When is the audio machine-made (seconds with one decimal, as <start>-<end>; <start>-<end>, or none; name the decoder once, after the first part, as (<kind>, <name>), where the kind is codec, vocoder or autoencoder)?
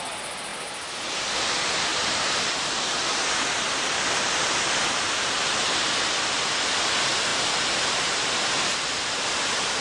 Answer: 1.9-4.4 (vocoder, BigVGAN v2)